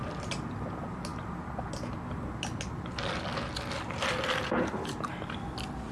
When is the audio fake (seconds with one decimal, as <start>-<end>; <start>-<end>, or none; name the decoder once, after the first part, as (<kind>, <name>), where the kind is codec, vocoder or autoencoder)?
none